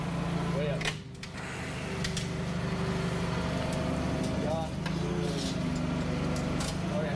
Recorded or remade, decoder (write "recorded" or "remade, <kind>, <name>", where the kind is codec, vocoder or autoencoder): recorded